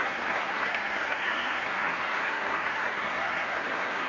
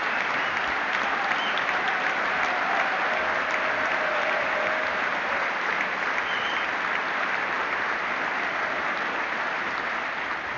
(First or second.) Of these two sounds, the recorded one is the second